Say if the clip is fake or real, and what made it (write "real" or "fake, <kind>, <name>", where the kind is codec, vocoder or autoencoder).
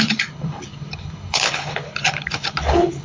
fake, codec, HILCodec